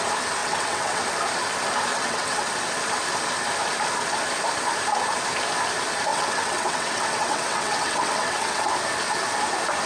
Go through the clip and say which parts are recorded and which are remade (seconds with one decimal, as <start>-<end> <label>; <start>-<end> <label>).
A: 0.0-0.4 recorded; 0.4-1.0 remade; 1.0-1.9 recorded; 1.9-2.5 remade; 2.5-6.1 recorded; 6.1-8.7 remade; 8.7-9.9 recorded